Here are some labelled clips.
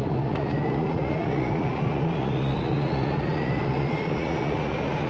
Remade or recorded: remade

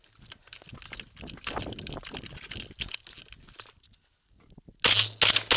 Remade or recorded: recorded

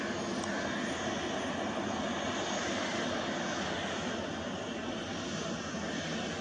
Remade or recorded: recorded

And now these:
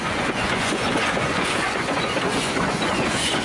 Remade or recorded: remade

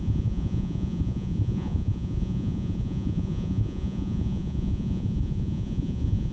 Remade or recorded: remade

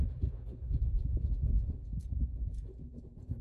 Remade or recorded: remade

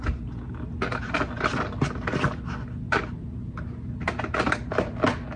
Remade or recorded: recorded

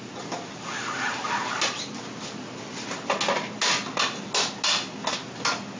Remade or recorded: recorded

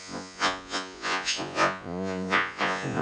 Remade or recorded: remade